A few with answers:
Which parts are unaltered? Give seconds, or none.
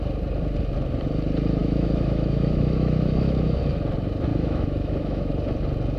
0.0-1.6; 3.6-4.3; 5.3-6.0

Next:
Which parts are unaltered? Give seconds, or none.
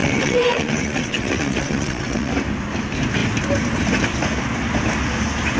2.3-5.6